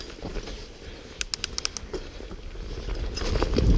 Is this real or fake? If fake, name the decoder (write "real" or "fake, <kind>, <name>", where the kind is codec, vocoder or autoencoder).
real